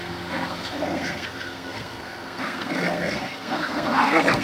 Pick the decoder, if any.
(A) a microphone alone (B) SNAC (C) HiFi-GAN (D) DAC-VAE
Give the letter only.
B